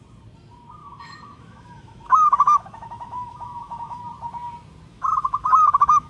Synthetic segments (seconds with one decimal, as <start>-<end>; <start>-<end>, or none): 0.8-4.0; 4.9-6.1